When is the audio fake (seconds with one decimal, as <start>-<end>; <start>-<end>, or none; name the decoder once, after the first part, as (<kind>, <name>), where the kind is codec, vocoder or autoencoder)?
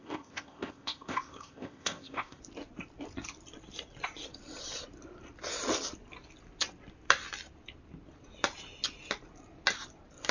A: 0.0-2.4 (codec, ZipCodec)